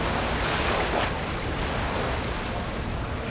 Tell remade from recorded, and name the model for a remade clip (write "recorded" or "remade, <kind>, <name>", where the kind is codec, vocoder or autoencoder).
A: recorded